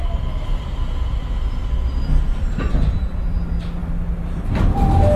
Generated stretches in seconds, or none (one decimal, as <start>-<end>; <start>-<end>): none